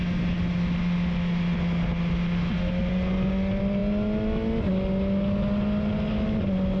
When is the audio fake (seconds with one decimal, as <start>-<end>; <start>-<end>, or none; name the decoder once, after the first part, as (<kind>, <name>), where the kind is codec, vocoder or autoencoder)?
none